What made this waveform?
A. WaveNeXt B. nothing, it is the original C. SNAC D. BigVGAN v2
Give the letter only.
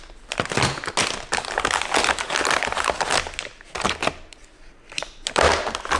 B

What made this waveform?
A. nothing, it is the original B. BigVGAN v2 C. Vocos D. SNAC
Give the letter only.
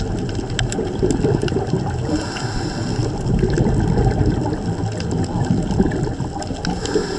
A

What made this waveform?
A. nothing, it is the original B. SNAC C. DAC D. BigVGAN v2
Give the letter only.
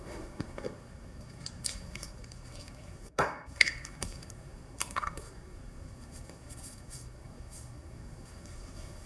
B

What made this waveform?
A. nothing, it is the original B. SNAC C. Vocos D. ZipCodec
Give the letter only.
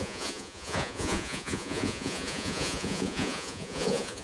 C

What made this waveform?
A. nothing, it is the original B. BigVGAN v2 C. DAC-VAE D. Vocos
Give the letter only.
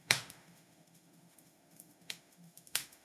C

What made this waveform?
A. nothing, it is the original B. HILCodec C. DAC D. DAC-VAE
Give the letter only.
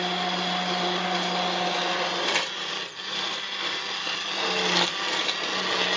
A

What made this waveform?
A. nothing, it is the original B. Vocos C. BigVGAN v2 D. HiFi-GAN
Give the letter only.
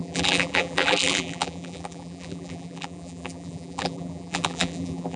C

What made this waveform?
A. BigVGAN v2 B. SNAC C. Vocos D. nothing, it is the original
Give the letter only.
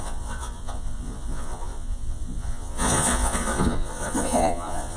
C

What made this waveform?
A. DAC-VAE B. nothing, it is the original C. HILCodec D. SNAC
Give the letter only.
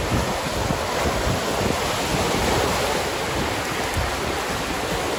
B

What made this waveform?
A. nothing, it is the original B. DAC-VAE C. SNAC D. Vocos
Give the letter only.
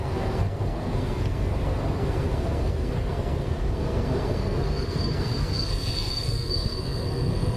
C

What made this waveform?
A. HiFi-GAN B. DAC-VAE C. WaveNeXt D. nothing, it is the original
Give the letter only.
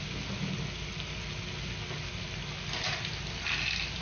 D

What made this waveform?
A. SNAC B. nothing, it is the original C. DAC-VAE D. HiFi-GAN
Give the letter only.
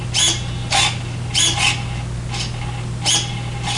B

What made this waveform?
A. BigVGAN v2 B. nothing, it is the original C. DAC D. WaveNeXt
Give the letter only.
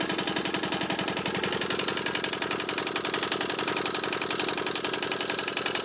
B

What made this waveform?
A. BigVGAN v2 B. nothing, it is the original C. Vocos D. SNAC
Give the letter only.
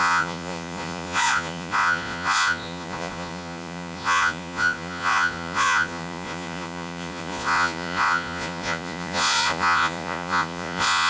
C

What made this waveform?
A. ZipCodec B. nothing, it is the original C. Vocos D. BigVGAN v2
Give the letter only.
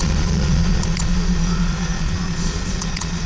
C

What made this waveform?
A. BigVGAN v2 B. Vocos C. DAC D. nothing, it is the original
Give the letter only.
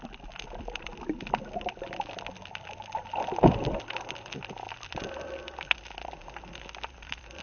D